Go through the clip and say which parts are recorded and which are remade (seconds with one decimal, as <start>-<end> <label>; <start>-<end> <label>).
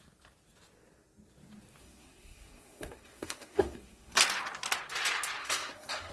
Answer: 0.0-1.8 recorded; 1.8-4.2 remade; 4.2-5.4 recorded; 5.4-6.1 remade